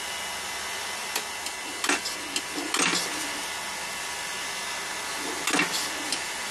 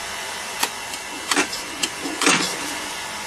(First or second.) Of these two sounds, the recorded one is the first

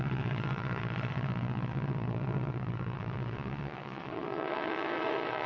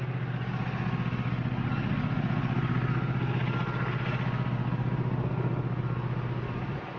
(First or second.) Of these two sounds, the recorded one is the second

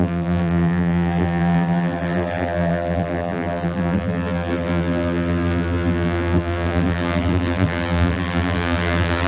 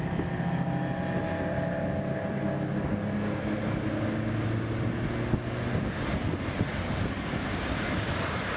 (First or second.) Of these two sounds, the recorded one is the second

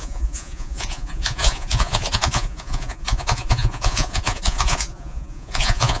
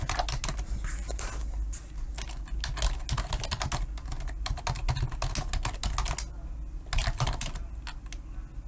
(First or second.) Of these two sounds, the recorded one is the second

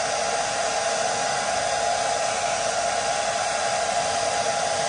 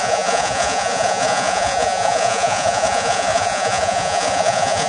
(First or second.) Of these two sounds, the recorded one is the first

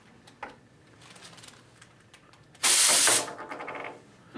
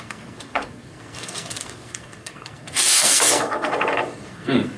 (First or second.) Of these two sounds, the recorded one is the first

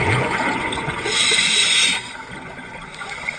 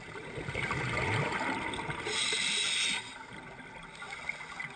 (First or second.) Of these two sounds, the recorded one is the second